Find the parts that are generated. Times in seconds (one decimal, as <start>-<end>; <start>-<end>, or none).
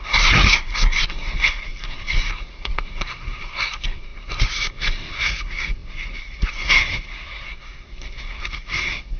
0.0-9.2